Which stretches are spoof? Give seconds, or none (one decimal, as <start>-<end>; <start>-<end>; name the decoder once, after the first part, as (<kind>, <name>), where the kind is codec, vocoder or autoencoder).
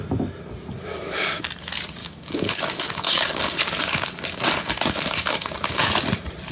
0.9-1.5 (codec, DAC); 2.0-5.9